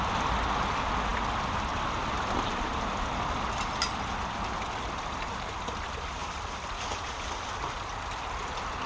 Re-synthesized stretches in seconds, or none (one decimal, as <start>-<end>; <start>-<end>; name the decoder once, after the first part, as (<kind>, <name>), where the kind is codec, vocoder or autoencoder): none